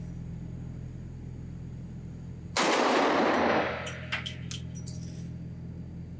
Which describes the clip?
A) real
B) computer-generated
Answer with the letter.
A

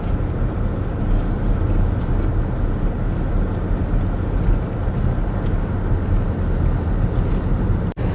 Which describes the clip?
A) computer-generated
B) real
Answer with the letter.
B